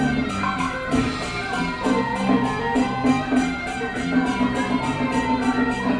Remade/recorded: recorded